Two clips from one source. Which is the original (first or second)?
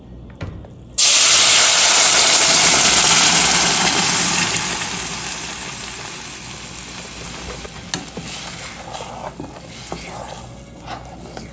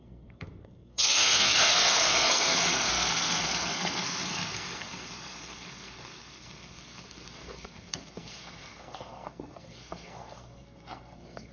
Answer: first